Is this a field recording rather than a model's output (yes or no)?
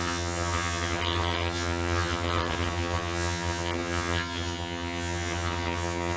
no